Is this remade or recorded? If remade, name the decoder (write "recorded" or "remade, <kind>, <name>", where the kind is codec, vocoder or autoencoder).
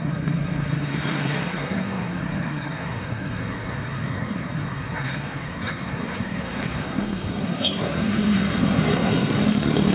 remade, codec, SNAC